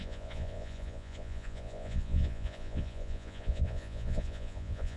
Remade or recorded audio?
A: remade